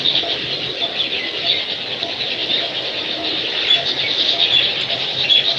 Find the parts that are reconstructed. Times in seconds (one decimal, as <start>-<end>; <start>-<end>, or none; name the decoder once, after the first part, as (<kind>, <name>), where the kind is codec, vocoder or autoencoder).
none